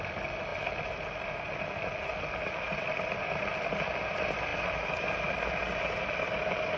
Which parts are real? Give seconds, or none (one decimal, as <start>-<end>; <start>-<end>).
0.5-3.7